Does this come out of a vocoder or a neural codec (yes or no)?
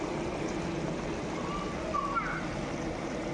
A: no